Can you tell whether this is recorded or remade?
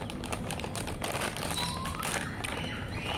recorded